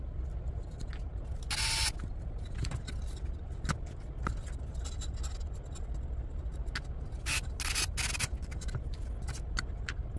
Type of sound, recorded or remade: recorded